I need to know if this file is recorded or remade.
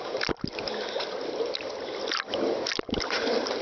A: recorded